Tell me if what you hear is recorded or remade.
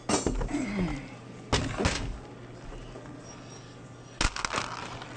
recorded